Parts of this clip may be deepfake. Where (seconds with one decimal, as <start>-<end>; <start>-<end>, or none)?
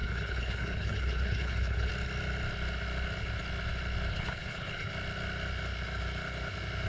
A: 0.0-1.9; 4.1-4.9